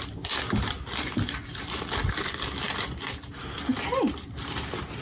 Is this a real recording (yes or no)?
yes